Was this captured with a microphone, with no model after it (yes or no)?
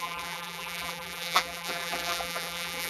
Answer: no